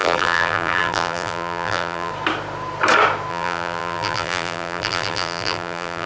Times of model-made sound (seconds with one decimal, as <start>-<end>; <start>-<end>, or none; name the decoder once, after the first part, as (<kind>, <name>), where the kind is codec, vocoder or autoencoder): 0.0-2.1 (vocoder, BigVGAN v2); 3.3-6.1

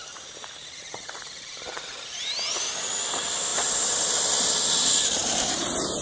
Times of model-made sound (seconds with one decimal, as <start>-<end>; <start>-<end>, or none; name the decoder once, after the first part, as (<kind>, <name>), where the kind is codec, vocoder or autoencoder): 0.6-1.6 (vocoder, BigVGAN v2); 3.5-4.1; 5.2-6.0

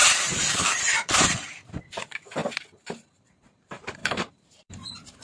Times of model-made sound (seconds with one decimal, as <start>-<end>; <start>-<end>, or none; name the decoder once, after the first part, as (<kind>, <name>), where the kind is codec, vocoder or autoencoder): 0.0-2.4 (vocoder, BigVGAN v2); 3.1-5.2

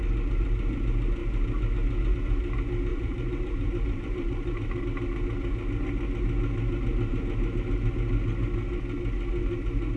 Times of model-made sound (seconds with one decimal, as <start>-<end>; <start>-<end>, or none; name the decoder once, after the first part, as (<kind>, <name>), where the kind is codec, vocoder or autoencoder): 2.9-4.8 (vocoder, BigVGAN v2)

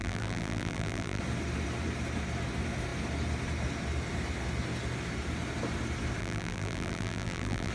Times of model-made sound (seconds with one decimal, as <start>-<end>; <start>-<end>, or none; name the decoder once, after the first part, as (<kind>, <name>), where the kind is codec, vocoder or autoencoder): 0.0-1.2 (vocoder, BigVGAN v2); 6.2-7.7

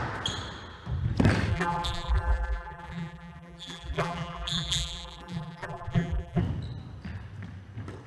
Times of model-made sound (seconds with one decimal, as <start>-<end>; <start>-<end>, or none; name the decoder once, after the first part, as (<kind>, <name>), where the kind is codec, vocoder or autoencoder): 1.5-6.4 (vocoder, BigVGAN v2)

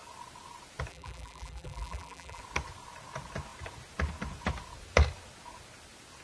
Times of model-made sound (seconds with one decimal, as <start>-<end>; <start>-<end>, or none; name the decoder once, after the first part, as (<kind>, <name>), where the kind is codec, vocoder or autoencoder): 0.9-2.4 (vocoder, BigVGAN v2)